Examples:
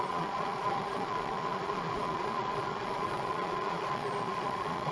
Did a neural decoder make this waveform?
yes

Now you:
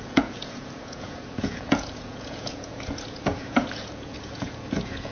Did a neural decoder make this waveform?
yes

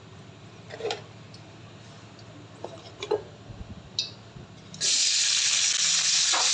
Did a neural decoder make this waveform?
no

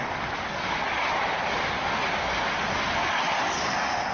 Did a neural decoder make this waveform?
no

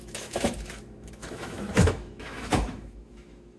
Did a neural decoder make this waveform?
yes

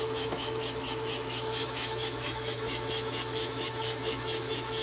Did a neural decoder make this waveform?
yes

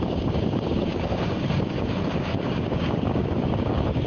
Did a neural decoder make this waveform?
yes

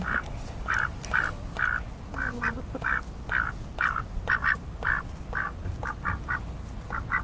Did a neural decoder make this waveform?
no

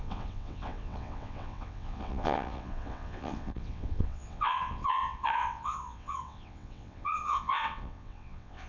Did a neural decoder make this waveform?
yes